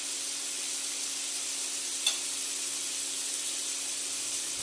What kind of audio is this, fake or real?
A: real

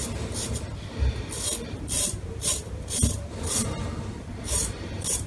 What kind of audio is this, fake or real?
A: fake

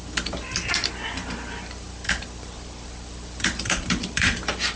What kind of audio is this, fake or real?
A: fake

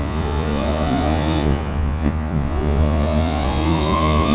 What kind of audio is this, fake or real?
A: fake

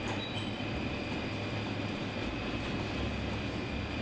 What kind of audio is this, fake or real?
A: real